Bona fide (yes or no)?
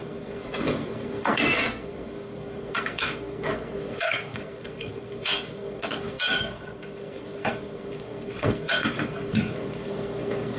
no